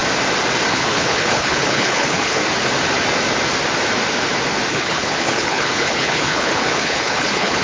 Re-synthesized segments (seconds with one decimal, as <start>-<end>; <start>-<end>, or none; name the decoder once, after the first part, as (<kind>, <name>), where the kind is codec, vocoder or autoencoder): 0.7-2.4 (codec, HILCodec); 4.7-7.6